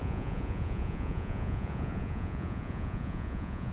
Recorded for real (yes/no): no